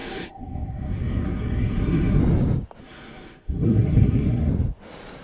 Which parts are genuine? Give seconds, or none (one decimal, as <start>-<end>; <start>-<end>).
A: 2.2-2.8; 4.5-5.2